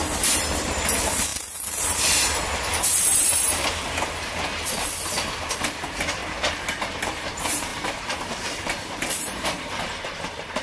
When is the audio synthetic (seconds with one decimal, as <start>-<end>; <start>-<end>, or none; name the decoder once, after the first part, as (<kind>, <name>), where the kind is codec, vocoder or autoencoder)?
0.5-6.2 (vocoder, BigVGAN v2); 7.0-10.6